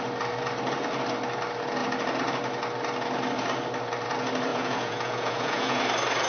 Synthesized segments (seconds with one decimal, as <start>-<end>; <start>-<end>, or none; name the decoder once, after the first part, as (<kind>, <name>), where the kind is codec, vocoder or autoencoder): 4.5-5.8 (vocoder, Vocos)

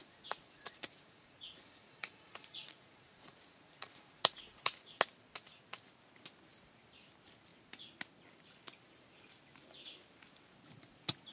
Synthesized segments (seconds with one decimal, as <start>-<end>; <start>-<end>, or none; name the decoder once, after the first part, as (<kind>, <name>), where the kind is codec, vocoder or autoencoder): 0.0-5.0 (vocoder, Vocos)